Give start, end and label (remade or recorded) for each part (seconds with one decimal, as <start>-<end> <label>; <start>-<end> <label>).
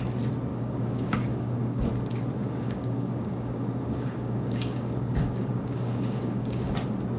0.0-0.5 recorded; 0.5-1.9 remade; 1.9-2.4 recorded; 2.4-6.7 remade; 6.7-7.2 recorded